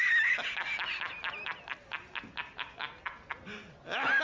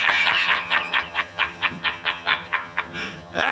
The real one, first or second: first